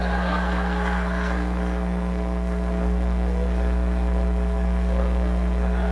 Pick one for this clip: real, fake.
fake